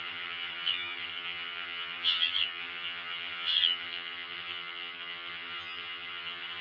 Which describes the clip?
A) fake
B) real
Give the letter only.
A